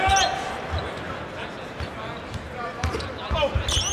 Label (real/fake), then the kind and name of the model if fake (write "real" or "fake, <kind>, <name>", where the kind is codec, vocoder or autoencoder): real